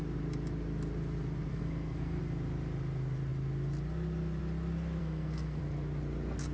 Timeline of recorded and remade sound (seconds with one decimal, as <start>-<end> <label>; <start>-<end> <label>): 0.0-1.5 recorded; 1.5-2.2 remade; 2.2-5.0 recorded; 5.0-5.6 remade; 5.6-6.5 recorded